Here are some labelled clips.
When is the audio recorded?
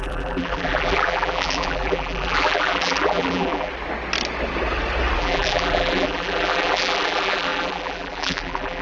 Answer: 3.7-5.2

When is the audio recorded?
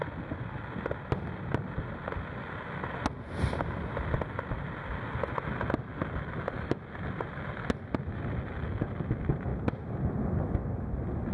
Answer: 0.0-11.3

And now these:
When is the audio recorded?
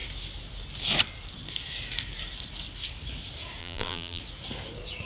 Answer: 0.0-3.6; 4.2-5.1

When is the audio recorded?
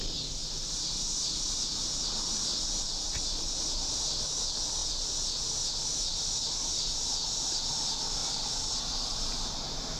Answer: 0.0-8.2; 8.8-10.0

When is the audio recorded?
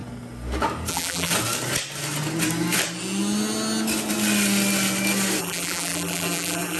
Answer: 0.0-0.9; 1.3-5.4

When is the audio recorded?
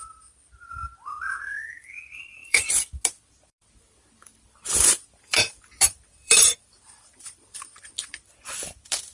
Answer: none